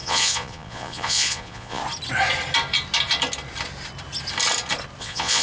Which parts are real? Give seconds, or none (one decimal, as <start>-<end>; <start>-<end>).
1.8-5.0